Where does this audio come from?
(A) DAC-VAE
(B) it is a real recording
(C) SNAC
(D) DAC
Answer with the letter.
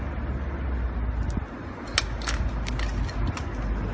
B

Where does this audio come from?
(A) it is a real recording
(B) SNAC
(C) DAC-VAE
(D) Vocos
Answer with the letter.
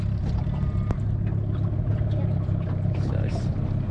A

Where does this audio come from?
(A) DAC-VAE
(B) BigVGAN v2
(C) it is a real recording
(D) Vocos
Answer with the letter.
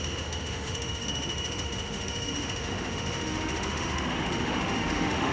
A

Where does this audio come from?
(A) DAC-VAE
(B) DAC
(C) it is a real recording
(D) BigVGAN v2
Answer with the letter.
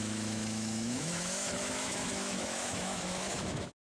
A